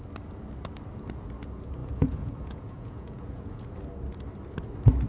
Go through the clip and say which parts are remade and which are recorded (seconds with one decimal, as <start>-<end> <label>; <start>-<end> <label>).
0.0-1.8 recorded; 1.8-3.8 remade; 3.8-5.1 recorded

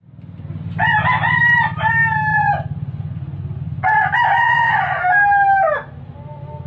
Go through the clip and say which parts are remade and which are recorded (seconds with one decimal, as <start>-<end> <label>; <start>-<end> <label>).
0.0-2.3 recorded; 2.3-4.8 remade; 4.8-6.7 recorded

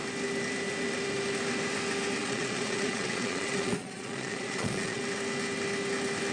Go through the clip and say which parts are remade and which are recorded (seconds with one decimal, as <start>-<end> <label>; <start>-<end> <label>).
0.0-2.2 recorded; 2.2-5.0 remade; 5.0-6.3 recorded

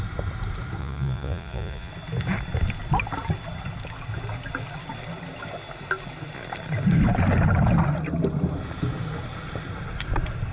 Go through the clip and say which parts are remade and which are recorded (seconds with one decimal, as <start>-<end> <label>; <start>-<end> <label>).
0.0-0.8 recorded; 0.8-1.9 remade; 1.9-10.5 recorded

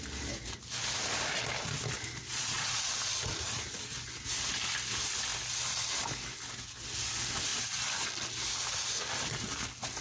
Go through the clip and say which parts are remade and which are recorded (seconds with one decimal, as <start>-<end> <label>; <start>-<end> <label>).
0.0-2.3 recorded; 2.3-2.9 remade; 2.9-10.0 recorded

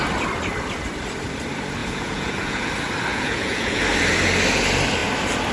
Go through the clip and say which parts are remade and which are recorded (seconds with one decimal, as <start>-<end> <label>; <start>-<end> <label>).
0.0-1.8 recorded; 1.8-2.7 remade; 2.7-3.1 recorded; 3.1-3.8 remade; 3.8-5.5 recorded

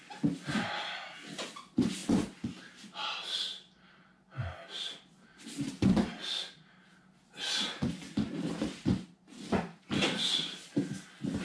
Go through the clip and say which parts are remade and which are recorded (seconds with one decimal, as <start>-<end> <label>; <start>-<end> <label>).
0.0-11.4 recorded

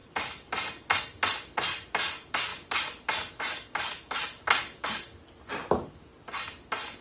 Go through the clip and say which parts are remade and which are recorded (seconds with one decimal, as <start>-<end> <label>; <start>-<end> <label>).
0.0-7.0 recorded